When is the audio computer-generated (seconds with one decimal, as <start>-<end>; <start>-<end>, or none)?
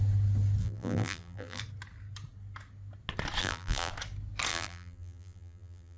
0.6-1.6; 3.4-3.9; 4.5-6.0